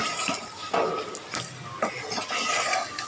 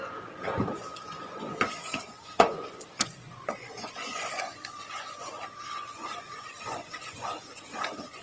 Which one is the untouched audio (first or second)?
first